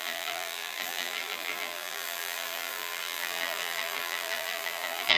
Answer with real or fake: fake